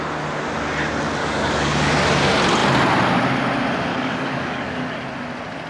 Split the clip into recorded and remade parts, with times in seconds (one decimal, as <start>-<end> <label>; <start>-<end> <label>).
0.0-1.2 recorded; 1.2-1.9 remade; 1.9-3.9 recorded; 3.9-4.9 remade; 4.9-5.7 recorded